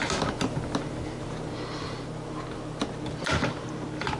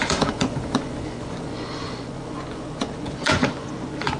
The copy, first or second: second